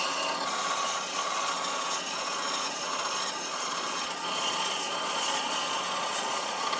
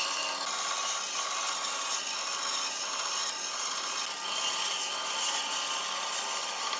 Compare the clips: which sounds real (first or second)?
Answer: second